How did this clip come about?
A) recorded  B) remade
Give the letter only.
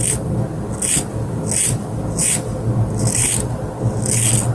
A